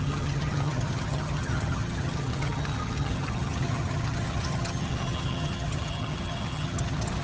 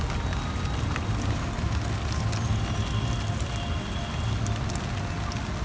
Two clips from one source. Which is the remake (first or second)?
first